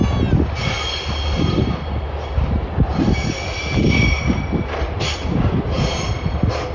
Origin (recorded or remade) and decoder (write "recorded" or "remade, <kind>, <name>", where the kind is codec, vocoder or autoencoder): recorded